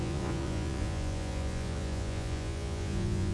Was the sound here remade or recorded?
remade